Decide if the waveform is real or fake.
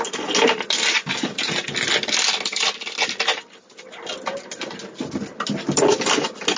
real